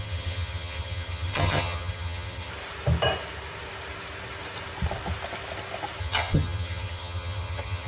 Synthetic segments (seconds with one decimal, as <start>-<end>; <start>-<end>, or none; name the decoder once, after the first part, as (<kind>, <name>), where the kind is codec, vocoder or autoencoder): 0.0-2.5 (vocoder, HiFi-GAN); 6.0-7.9